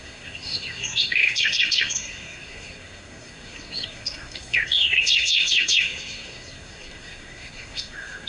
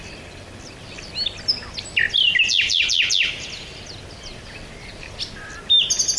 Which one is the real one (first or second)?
second